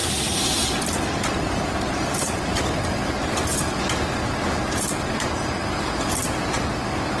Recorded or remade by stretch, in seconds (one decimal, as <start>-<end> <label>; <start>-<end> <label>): 0.0-4.3 remade; 4.3-5.6 recorded; 5.6-6.4 remade; 6.4-7.2 recorded